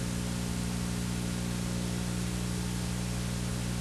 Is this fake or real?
real